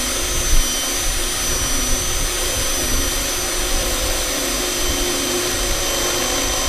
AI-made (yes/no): no